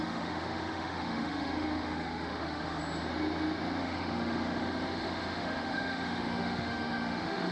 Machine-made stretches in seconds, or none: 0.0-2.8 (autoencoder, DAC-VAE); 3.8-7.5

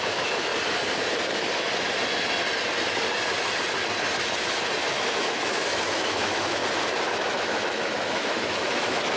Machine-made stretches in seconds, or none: 0.0-0.5 (autoencoder, DAC-VAE); 4.9-6.6; 7.1-9.2